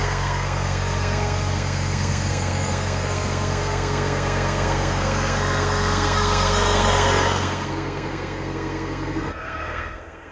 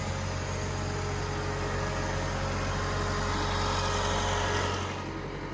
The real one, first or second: second